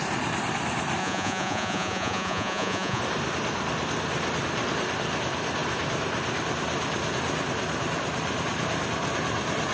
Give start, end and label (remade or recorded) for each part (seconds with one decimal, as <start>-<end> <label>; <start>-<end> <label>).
0.0-1.0 recorded; 1.0-3.0 remade; 3.0-9.7 recorded